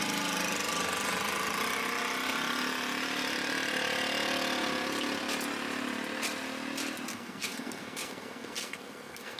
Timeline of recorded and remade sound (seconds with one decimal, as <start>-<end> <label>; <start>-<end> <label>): 0.0-7.1 recorded; 7.1-9.4 remade